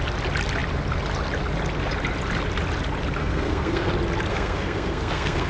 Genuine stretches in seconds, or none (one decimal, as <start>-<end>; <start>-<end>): 0.0-3.2; 3.9-4.3